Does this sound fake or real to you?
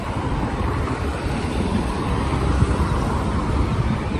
fake